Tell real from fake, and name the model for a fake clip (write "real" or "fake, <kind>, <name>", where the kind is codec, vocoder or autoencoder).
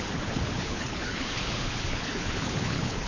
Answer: fake, codec, HILCodec